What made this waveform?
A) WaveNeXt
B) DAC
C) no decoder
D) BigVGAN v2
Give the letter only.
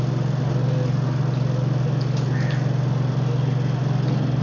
C